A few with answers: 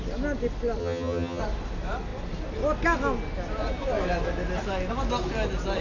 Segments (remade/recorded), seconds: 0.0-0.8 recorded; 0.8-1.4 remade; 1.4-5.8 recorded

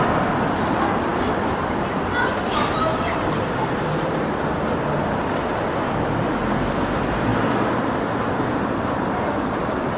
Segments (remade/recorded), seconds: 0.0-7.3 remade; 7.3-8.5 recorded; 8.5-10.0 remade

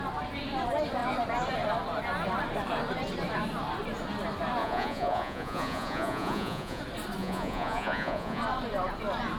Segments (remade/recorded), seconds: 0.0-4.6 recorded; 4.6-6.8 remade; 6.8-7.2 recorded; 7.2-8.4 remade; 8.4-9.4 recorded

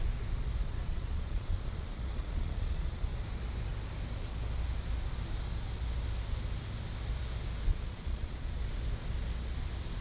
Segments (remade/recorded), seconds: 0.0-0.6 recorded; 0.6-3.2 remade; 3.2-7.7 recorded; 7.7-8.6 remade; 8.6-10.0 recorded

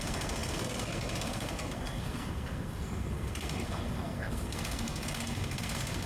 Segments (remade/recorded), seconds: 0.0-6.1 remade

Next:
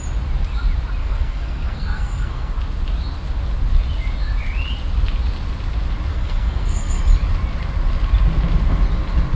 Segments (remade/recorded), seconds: 0.0-1.0 recorded; 1.0-2.5 remade; 2.5-6.1 recorded; 6.1-7.0 remade; 7.0-9.4 recorded